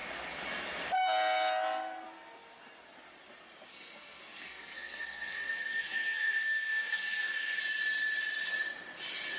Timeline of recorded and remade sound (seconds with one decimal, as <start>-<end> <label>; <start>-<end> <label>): 0.0-3.7 recorded; 3.7-7.6 remade; 7.6-9.4 recorded